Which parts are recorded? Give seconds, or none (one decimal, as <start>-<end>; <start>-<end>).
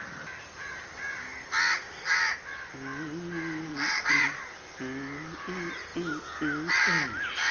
0.0-3.7; 4.4-7.5